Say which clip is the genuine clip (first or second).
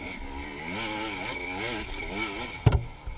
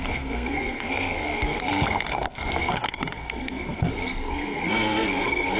first